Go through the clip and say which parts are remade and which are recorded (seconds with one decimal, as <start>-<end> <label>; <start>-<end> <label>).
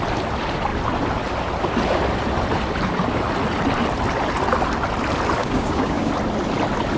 0.0-5.4 recorded; 5.4-6.1 remade; 6.1-7.0 recorded